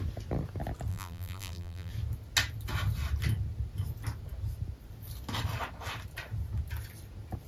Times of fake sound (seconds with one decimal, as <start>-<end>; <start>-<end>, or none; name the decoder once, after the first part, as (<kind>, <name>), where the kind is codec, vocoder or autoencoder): 0.9-1.9 (vocoder, BigVGAN v2)